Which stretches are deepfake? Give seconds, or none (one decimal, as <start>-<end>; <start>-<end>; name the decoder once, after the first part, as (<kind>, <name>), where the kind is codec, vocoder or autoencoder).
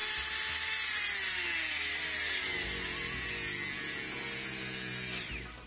none